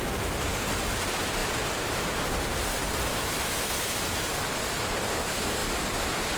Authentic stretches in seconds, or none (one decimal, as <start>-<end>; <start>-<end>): 0.0-3.1; 4.3-6.4